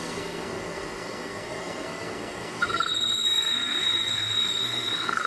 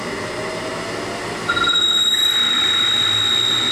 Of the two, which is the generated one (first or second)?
first